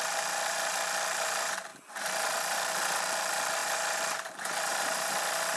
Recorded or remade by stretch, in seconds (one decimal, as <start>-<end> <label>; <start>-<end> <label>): 0.0-1.7 remade; 1.7-2.3 recorded; 2.3-3.6 remade; 3.6-4.7 recorded; 4.7-5.6 remade